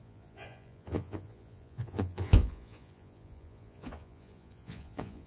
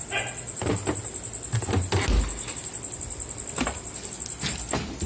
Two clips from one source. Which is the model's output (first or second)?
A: first